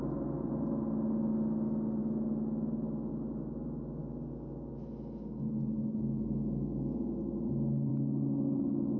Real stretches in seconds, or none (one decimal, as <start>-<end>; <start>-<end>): 0.0-9.0